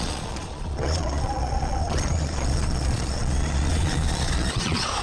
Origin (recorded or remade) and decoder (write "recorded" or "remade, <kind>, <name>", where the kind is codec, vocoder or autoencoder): remade, vocoder, Vocos